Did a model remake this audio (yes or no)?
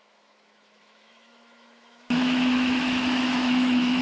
yes